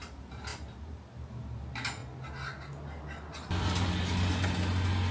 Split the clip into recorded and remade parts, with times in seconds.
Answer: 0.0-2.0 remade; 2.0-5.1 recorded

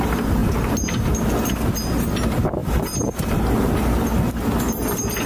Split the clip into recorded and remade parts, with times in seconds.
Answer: 0.0-2.6 recorded; 2.6-3.7 remade; 3.7-5.3 recorded